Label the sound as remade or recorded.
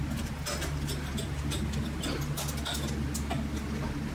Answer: recorded